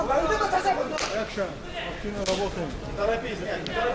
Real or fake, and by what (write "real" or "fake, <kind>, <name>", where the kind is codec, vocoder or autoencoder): real